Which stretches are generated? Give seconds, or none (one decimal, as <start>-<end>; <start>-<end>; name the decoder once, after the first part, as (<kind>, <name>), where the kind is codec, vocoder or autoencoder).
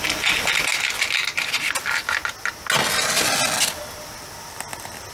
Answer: none